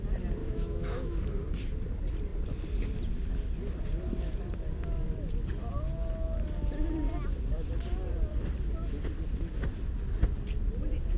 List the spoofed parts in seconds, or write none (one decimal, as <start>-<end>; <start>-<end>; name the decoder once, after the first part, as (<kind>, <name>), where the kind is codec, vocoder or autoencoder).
0.4-1.2 (autoencoder, DAC-VAE)